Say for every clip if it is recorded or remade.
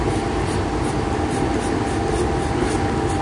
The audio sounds recorded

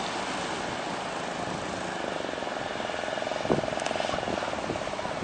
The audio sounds recorded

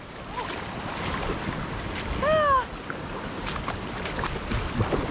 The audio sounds recorded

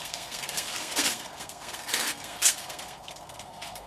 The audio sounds remade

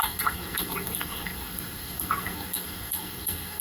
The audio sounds remade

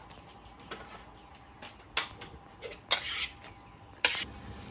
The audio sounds recorded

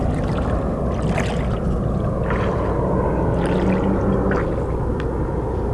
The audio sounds recorded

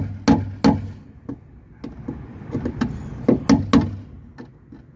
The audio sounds recorded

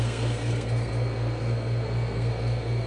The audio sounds remade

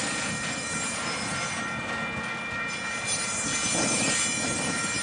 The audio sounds recorded